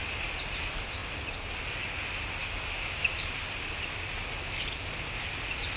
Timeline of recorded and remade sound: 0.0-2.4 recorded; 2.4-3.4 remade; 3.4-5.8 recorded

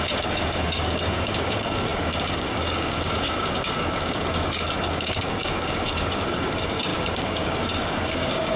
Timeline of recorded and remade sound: 0.0-8.6 remade

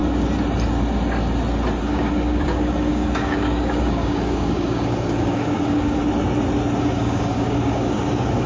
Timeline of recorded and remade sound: 0.0-1.8 recorded; 1.8-6.0 remade; 6.0-6.8 recorded; 6.8-8.5 remade

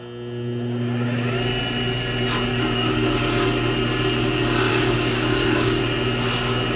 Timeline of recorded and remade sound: 0.0-2.5 recorded; 2.5-3.4 remade; 3.4-4.7 recorded; 4.7-5.8 remade; 5.8-6.8 recorded

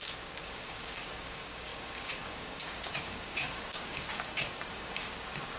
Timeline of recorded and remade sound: 0.0-5.6 remade

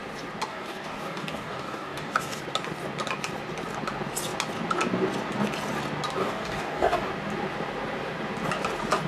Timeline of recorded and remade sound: 0.0-0.5 recorded; 0.5-2.4 remade; 2.4-6.2 recorded; 6.2-7.1 remade; 7.1-9.1 recorded

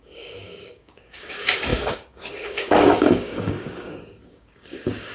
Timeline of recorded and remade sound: 0.0-5.1 remade